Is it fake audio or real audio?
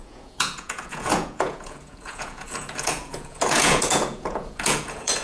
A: fake